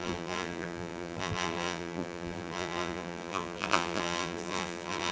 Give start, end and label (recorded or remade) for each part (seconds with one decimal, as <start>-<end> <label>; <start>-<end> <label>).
0.0-5.1 remade